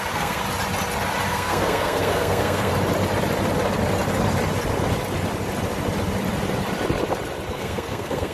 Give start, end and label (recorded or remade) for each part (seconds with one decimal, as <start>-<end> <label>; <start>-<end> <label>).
0.0-0.4 remade; 0.4-1.3 recorded; 1.3-2.7 remade; 2.7-7.5 recorded; 7.5-8.3 remade